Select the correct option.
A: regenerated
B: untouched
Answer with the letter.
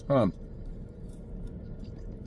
A